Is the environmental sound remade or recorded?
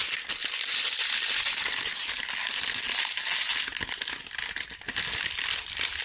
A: recorded